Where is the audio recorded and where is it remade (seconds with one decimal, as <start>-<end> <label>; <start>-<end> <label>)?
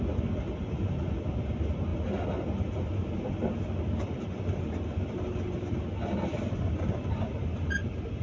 0.0-8.2 recorded